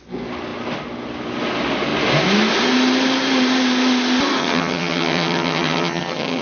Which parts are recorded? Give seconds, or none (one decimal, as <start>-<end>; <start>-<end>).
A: 0.0-4.4